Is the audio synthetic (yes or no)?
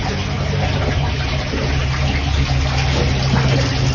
no